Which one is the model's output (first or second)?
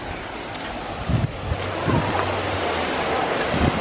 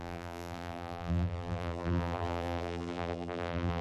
second